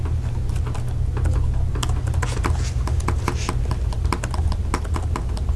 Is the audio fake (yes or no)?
no